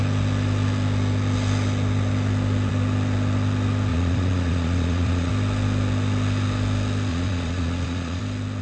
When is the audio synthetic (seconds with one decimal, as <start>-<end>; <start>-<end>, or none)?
3.9-5.3; 7.1-8.2